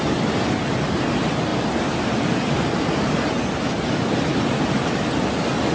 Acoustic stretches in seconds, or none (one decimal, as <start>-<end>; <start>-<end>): 0.0-5.7